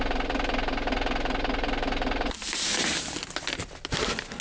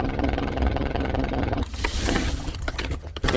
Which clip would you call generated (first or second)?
second